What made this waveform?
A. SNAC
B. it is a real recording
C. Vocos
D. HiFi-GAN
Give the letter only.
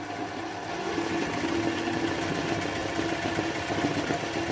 B